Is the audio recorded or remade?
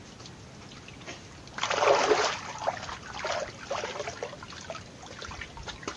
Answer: recorded